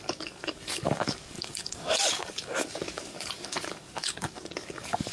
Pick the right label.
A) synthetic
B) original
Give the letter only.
A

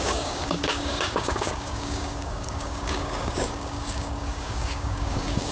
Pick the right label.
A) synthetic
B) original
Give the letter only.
A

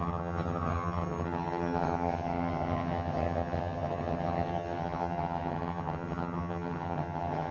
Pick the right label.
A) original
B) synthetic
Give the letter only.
B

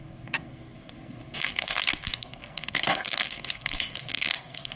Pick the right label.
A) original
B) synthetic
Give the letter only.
B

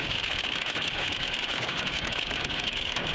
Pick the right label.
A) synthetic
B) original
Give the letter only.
A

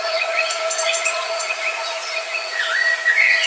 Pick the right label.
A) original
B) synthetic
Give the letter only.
B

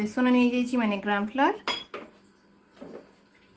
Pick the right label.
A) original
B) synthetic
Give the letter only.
A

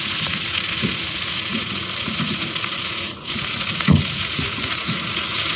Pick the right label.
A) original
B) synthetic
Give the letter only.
B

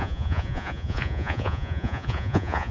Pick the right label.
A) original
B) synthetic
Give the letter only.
B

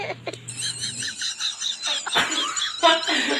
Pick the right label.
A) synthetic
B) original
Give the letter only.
B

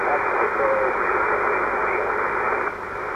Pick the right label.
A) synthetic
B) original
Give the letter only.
B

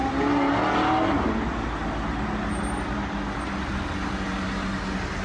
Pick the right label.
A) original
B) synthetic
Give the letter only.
A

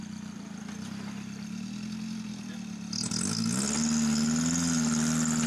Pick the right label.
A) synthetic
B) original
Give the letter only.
B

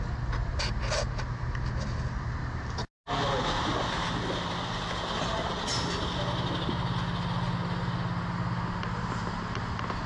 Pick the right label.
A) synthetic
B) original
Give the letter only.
B